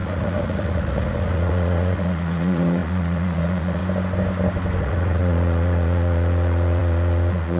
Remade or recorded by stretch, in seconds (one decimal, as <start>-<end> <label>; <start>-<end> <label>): 0.0-3.8 remade; 3.8-4.8 recorded; 4.8-7.6 remade